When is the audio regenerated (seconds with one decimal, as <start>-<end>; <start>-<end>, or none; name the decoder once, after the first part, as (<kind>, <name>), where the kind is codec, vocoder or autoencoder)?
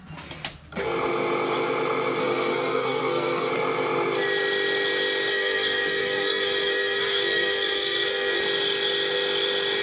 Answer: 2.2-3.5 (codec, SNAC); 5.3-8.4